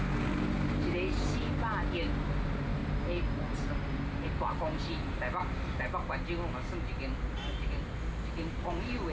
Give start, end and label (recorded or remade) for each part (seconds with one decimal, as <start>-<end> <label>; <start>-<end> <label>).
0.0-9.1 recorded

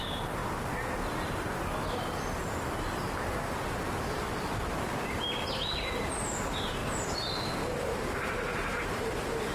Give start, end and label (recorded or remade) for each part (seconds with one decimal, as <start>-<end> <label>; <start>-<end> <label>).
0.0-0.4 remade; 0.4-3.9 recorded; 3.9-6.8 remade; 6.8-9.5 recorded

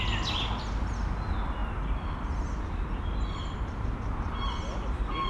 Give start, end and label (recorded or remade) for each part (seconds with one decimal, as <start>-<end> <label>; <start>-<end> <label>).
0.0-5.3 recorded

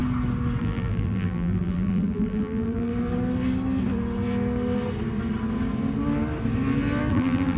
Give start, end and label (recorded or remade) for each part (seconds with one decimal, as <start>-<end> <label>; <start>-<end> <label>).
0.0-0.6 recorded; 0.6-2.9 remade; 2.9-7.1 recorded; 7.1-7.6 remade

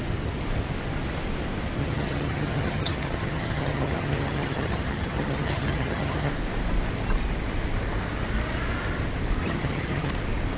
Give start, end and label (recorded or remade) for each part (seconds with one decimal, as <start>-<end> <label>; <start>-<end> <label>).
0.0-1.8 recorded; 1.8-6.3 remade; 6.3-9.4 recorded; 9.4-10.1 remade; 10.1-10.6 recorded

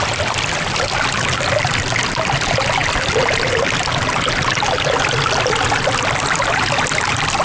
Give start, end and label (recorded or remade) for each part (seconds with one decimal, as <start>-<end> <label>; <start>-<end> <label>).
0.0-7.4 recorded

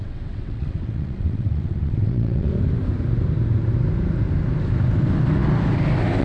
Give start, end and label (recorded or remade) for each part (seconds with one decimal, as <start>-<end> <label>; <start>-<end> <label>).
0.0-2.5 remade; 2.5-6.2 recorded